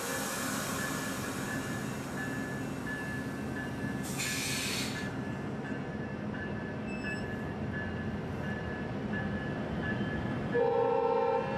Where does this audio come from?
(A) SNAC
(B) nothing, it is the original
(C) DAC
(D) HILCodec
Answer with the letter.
B